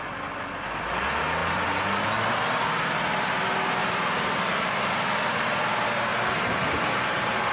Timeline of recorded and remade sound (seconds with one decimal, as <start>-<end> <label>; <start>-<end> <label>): 0.0-1.4 recorded; 1.4-2.3 remade; 2.3-3.8 recorded; 3.8-7.5 remade